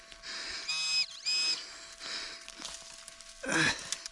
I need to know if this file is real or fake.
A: real